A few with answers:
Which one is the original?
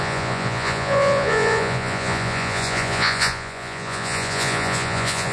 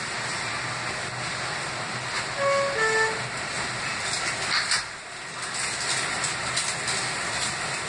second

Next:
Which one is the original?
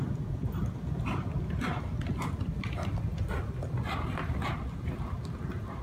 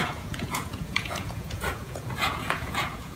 first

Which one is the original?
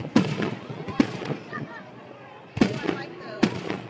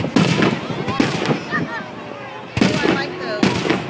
second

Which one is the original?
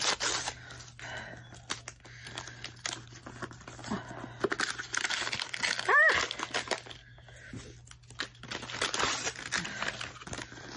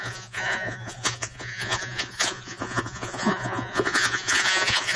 first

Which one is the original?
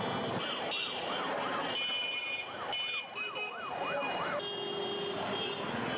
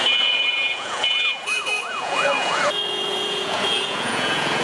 first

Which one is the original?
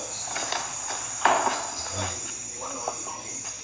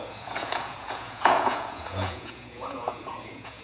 first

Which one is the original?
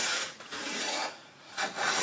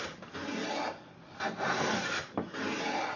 second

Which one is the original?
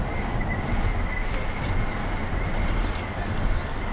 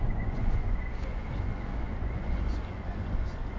first